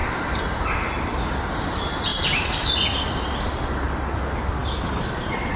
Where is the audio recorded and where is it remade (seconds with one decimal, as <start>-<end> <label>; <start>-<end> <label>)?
0.0-5.6 recorded